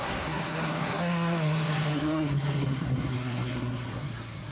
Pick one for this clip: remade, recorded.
remade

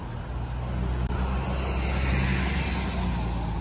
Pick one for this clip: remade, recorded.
recorded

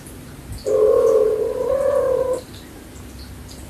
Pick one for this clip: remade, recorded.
recorded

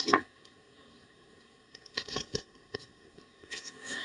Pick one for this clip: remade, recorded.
remade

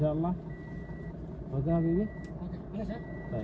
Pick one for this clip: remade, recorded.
recorded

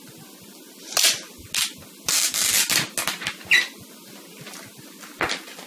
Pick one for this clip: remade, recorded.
recorded